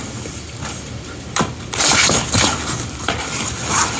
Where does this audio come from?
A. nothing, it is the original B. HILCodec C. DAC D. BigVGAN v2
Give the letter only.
D